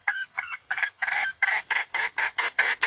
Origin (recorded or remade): remade